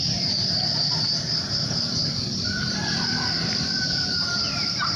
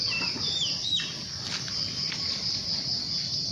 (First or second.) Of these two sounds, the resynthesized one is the first